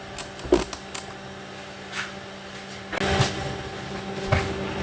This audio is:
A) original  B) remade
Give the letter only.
A